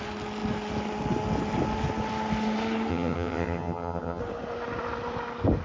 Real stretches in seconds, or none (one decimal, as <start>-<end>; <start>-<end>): 0.0-2.9; 4.2-5.6